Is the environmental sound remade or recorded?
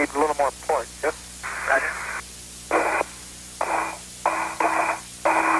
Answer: recorded